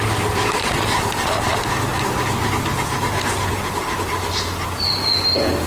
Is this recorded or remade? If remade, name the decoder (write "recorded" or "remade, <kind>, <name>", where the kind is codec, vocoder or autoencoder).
recorded